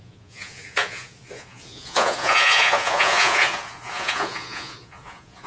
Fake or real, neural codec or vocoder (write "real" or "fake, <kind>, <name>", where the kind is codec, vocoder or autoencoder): fake, vocoder, Vocos